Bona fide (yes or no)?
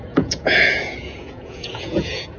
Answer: no